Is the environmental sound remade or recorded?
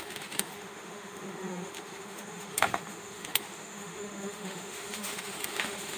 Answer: remade